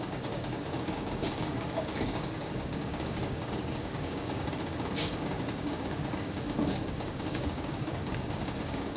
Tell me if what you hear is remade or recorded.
remade